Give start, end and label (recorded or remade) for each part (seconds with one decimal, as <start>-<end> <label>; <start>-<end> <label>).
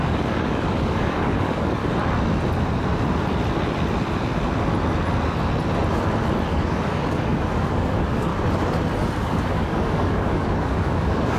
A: 0.0-1.8 remade; 1.8-6.5 recorded; 6.5-8.3 remade; 8.3-9.2 recorded; 9.2-11.4 remade